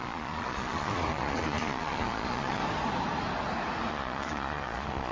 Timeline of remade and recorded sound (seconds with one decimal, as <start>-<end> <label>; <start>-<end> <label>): 0.0-2.6 remade; 2.6-3.9 recorded; 3.9-5.1 remade